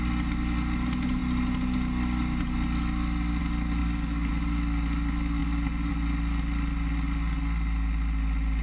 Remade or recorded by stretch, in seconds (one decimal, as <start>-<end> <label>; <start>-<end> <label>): 0.0-3.8 recorded; 3.8-4.3 remade; 4.3-8.6 recorded